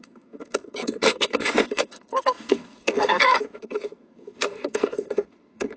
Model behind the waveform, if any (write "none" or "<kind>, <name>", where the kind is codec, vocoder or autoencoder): codec, SNAC